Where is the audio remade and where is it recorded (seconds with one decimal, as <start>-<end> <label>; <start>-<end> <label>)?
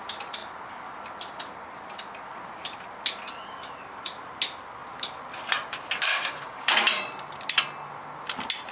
0.0-6.1 recorded; 6.1-7.1 remade; 7.1-8.7 recorded